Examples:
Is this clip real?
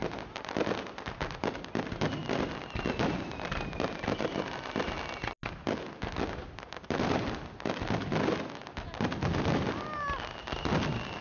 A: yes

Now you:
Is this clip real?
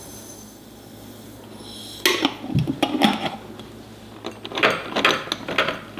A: yes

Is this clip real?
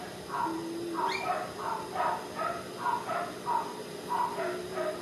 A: yes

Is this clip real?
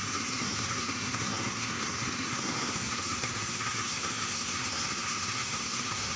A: no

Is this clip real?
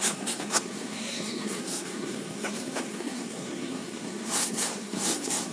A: no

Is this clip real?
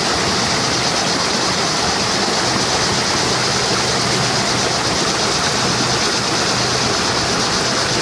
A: yes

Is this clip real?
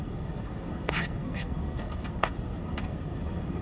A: no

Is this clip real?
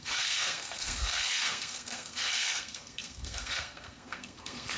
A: no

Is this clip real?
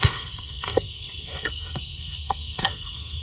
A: no